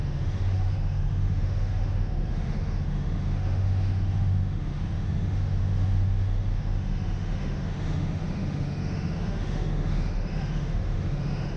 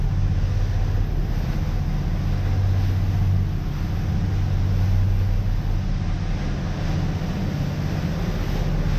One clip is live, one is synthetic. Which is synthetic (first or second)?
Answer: first